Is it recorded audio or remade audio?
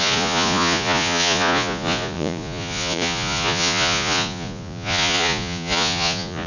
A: remade